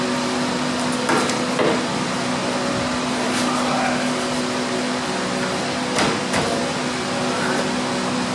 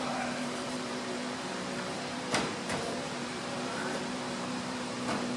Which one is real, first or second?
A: first